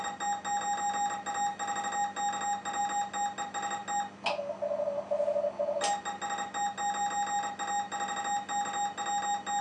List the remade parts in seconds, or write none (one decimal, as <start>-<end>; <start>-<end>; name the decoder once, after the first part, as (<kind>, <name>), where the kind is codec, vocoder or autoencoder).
none